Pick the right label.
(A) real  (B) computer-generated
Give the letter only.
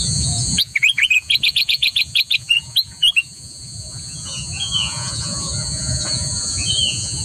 B